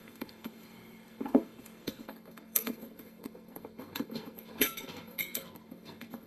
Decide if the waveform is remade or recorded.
remade